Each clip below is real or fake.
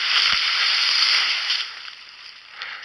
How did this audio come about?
real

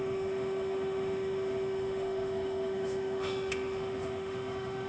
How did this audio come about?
fake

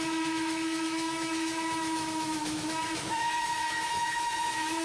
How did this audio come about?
fake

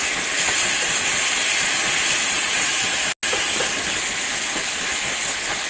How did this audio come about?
real